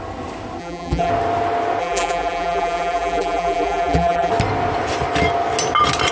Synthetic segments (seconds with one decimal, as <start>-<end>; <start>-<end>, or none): 0.6-1.1; 1.8-4.3